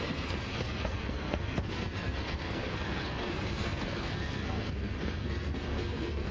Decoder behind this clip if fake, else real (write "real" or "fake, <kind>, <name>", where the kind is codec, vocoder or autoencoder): fake, codec, SNAC